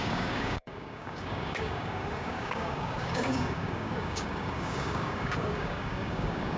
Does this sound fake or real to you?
fake